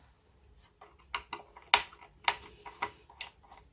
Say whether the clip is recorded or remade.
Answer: recorded